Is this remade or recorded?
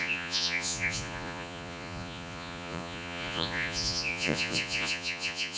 remade